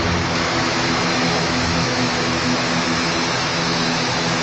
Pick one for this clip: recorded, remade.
remade